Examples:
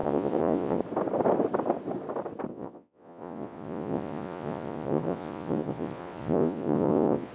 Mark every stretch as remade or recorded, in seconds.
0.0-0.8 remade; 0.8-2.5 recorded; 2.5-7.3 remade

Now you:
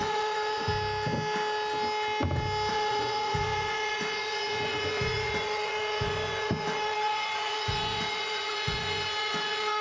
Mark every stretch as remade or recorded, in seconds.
0.0-0.7 remade; 0.7-2.7 recorded; 2.7-9.8 remade